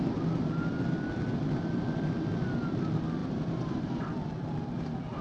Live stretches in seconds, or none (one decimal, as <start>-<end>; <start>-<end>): 0.0-3.2; 3.8-5.2